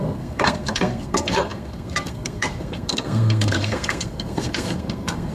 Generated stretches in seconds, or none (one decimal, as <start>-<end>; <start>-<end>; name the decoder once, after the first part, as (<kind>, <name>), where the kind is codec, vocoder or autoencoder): 0.0-5.3 (codec, SNAC)